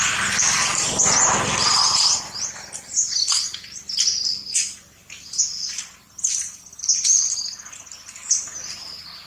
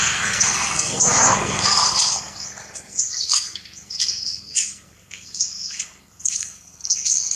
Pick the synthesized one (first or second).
second